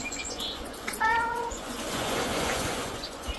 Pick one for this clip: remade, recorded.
remade